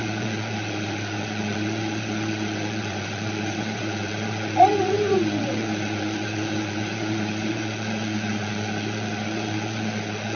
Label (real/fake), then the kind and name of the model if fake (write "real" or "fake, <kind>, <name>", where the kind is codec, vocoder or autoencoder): fake, vocoder, Vocos